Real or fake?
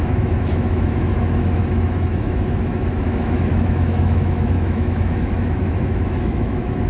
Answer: fake